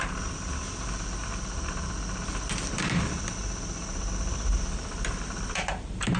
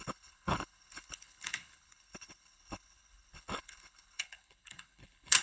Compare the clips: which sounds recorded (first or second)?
first